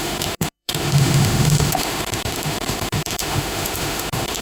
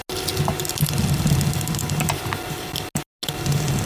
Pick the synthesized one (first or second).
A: first